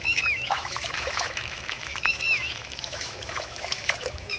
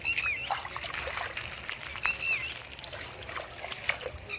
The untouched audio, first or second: second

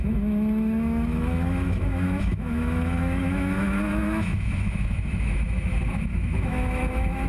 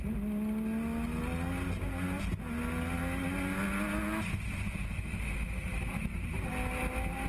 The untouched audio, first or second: second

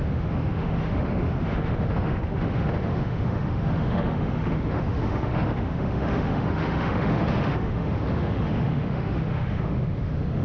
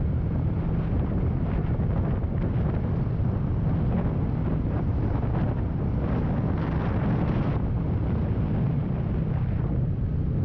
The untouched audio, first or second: second